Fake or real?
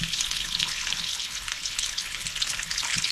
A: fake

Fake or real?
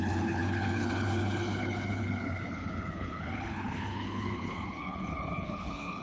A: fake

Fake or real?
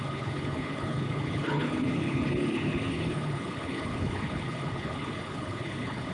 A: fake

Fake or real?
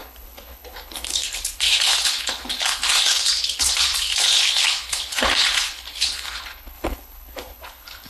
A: fake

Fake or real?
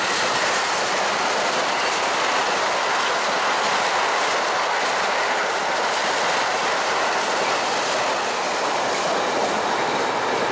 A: real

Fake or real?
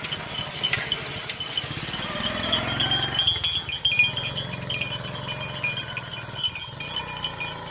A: real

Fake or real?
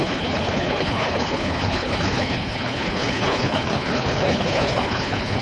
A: fake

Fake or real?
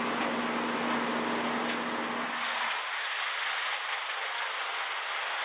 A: real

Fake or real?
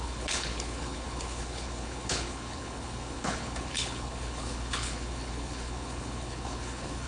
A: fake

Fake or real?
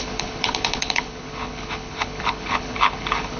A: fake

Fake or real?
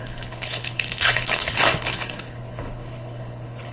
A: fake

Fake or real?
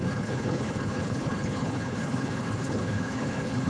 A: fake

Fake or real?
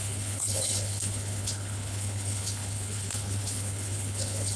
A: fake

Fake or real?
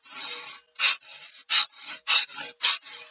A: real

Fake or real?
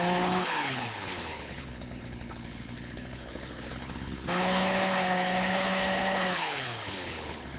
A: fake